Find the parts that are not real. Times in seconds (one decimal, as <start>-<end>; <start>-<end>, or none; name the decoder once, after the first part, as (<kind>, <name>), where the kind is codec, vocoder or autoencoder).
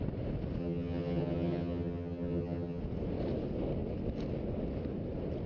0.6-2.8 (vocoder, HiFi-GAN)